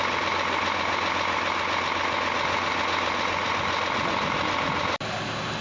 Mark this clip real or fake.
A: real